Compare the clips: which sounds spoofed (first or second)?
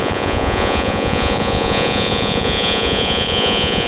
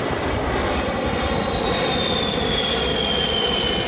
first